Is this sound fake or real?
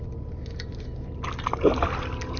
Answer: real